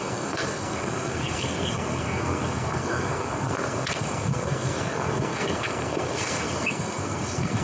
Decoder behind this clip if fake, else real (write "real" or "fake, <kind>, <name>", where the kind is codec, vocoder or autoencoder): fake, codec, SNAC